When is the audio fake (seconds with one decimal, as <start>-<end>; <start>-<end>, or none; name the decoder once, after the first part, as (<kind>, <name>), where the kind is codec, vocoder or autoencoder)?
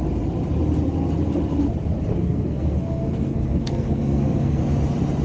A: 2.1-4.6 (codec, SNAC)